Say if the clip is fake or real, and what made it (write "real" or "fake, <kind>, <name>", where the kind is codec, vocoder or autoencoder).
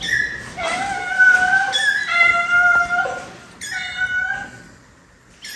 real